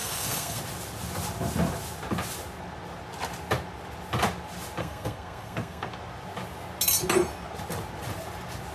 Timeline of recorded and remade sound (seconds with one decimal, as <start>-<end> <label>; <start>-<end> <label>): 0.0-0.6 remade; 0.6-4.8 recorded; 4.8-5.9 remade; 5.9-8.7 recorded